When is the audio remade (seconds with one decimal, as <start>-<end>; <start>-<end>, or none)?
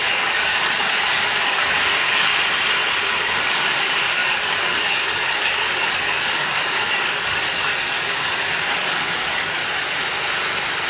0.0-2.3; 3.1-9.6